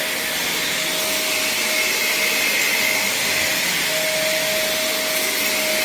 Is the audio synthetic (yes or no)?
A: no